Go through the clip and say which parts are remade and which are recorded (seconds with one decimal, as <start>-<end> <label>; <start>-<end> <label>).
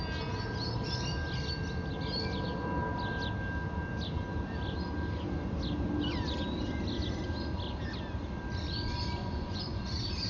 0.0-9.2 recorded; 9.2-9.8 remade; 9.8-10.3 recorded